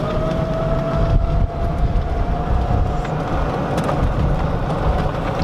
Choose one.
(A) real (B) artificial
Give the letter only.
A